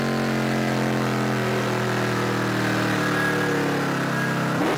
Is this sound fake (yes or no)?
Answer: no